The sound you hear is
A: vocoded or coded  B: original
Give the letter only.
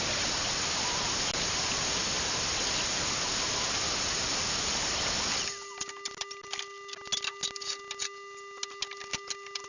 B